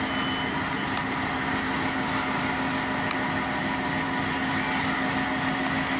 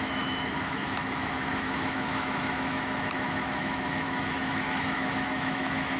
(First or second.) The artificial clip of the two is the second